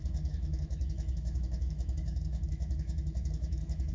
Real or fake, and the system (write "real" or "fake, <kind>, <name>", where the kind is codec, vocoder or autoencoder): fake, autoencoder, DAC-VAE